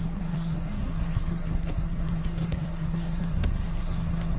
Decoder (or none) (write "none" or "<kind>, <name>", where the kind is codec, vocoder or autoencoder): codec, SNAC